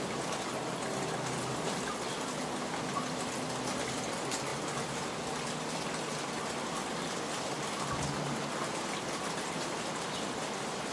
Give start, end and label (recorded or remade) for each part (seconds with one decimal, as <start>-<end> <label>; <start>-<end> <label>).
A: 0.0-10.9 recorded